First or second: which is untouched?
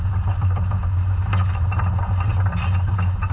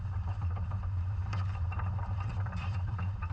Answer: first